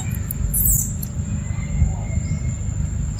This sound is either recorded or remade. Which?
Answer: recorded